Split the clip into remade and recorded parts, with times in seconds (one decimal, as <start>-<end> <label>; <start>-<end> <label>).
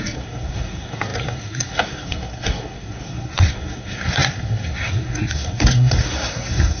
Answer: 0.0-6.8 remade